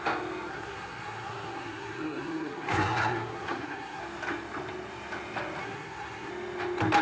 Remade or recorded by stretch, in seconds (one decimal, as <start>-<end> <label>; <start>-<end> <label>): 0.0-0.5 recorded; 0.5-4.0 remade; 4.0-5.6 recorded; 5.6-6.3 remade; 6.3-7.0 recorded